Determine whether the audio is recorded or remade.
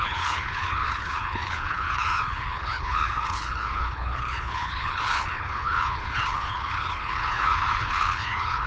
remade